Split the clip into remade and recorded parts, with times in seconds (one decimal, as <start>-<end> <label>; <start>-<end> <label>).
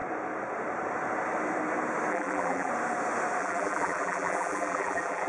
0.0-2.1 recorded; 2.1-2.7 remade; 2.7-3.4 recorded; 3.4-5.3 remade